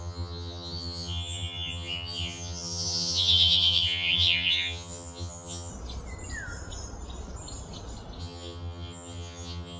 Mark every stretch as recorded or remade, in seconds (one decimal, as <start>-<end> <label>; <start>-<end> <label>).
0.0-5.7 remade; 5.7-8.2 recorded; 8.2-9.8 remade